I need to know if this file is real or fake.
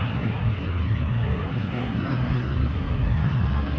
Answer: fake